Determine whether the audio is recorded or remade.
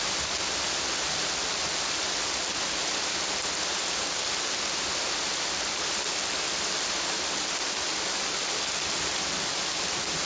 recorded